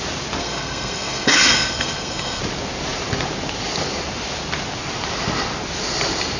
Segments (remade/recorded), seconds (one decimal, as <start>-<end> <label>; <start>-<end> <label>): 0.0-0.4 recorded; 0.4-2.4 remade; 2.4-6.4 recorded